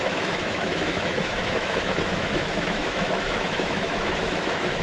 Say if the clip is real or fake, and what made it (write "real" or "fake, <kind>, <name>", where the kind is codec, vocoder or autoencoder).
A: fake, autoencoder, DAC-VAE